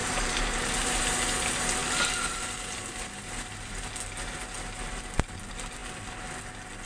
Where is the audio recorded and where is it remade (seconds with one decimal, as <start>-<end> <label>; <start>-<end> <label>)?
0.0-1.0 remade; 1.0-6.9 recorded